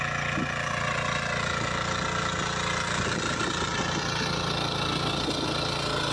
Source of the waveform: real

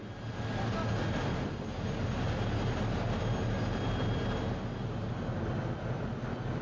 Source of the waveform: real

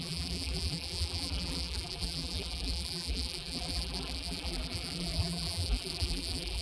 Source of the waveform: fake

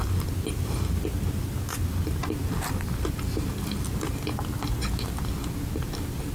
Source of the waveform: real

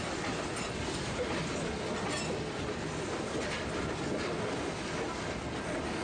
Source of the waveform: real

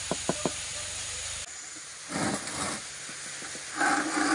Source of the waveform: real